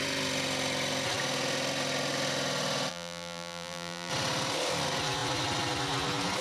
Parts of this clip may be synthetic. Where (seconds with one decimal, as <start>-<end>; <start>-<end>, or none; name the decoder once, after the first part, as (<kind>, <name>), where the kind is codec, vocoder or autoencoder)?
2.9-4.1 (vocoder, BigVGAN v2)